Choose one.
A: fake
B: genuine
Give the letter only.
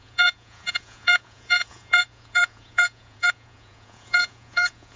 A